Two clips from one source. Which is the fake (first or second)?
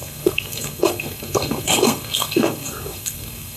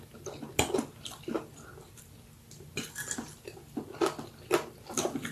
first